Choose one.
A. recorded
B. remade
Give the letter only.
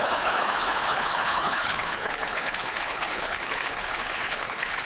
B